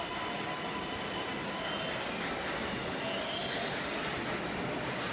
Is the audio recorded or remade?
recorded